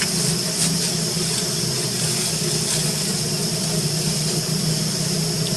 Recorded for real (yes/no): yes